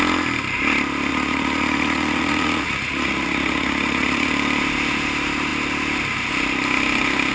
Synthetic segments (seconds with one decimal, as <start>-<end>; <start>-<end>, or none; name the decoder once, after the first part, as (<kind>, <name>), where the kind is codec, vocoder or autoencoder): 1.1-4.3 (vocoder, Vocos)